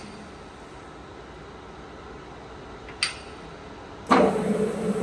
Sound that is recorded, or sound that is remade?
recorded